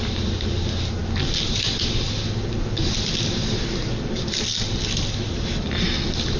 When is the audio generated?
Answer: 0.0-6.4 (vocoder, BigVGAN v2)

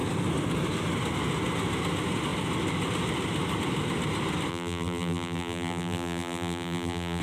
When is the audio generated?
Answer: 4.5-7.2 (vocoder, BigVGAN v2)

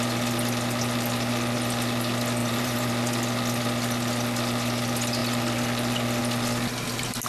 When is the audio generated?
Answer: 2.4-2.9 (vocoder, BigVGAN v2)

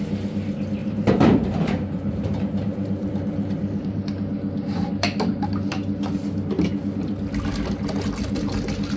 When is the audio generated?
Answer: 0.8-4.0 (vocoder, BigVGAN v2)

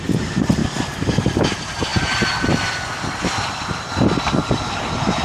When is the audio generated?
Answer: 0.0-0.6 (vocoder, BigVGAN v2); 1.2-1.9; 3.5-5.2

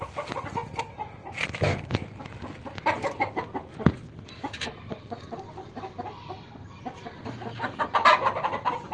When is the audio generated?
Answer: 0.0-8.9 (vocoder, BigVGAN v2)